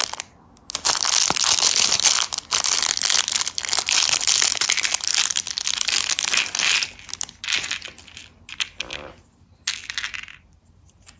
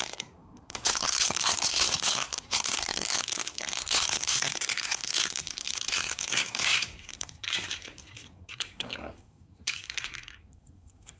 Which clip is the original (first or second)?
first